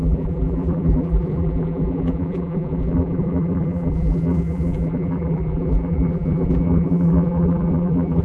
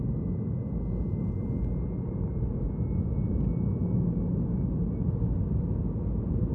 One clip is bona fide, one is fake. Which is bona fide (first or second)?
second